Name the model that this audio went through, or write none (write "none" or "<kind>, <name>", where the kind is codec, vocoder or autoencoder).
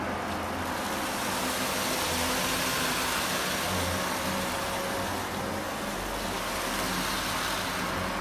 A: none